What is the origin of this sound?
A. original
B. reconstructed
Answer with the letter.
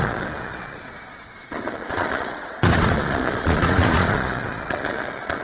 B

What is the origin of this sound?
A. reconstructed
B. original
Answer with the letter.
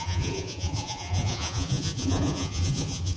A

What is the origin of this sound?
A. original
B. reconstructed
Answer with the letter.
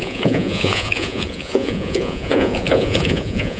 B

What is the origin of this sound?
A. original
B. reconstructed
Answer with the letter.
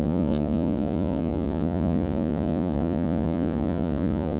B